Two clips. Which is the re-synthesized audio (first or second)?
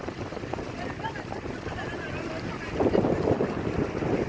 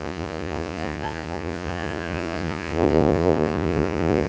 second